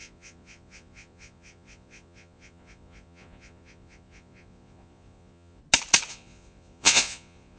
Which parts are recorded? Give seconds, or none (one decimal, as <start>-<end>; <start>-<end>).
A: 5.6-6.1